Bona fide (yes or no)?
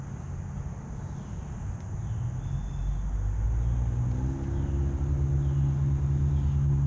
yes